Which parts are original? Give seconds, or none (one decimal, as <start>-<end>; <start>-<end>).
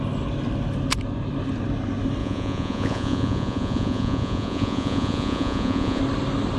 0.0-2.2; 6.0-6.6